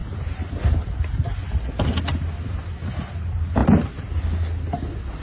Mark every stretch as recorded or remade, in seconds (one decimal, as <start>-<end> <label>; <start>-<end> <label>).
0.0-5.2 recorded